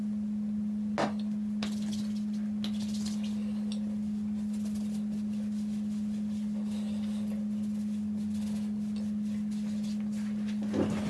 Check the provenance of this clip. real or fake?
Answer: real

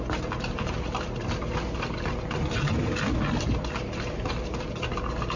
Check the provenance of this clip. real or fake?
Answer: real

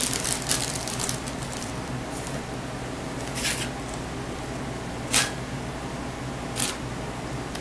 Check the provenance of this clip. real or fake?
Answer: real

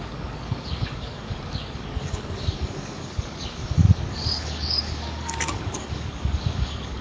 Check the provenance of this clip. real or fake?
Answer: fake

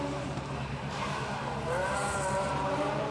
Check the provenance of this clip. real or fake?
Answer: fake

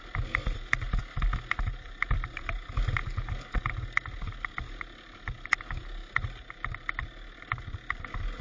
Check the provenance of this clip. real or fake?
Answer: real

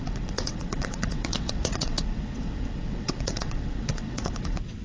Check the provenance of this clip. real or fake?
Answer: fake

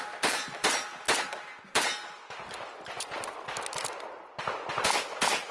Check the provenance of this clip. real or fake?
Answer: real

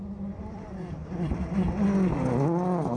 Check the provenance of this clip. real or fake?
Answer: real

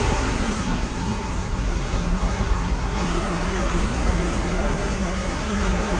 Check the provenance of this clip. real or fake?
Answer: fake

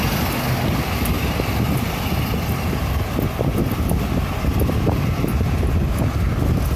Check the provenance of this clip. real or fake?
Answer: real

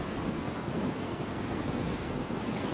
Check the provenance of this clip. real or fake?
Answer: fake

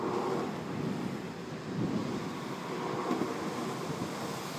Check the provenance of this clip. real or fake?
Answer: real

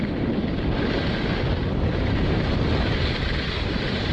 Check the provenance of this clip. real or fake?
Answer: real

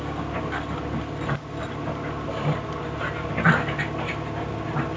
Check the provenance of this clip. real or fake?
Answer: real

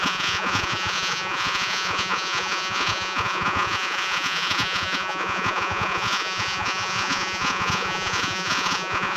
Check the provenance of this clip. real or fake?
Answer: fake